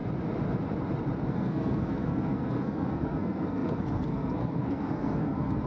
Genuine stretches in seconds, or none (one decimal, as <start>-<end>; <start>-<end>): 0.0-1.3